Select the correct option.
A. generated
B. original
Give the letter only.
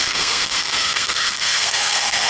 A